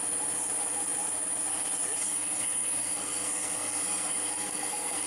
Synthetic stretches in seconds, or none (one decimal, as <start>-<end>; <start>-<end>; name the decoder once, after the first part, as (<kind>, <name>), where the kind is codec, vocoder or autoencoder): 2.0-5.1 (codec, SNAC)